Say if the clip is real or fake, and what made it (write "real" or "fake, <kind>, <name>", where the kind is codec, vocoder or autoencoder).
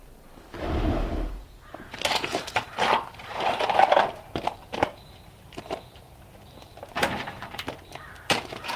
fake, vocoder, BigVGAN v2